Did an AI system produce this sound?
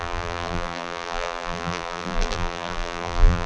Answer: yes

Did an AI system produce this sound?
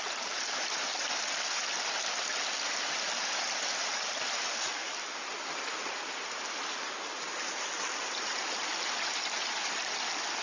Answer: no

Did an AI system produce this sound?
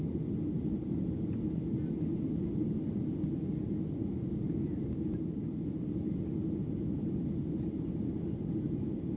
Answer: no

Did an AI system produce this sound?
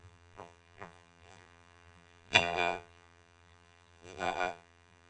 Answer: yes